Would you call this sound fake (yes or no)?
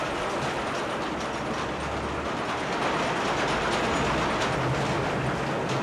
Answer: no